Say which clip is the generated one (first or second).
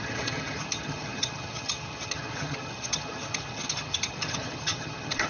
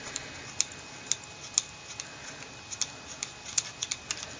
first